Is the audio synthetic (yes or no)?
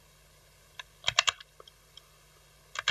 no